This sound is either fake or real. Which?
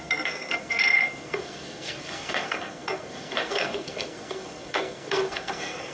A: fake